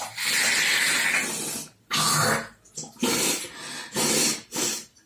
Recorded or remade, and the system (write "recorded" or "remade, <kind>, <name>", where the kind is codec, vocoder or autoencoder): recorded